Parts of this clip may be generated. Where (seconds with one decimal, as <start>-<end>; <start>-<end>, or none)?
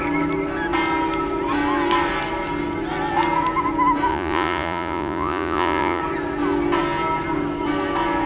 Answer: 4.1-6.0